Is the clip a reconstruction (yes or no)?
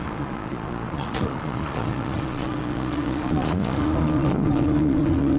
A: yes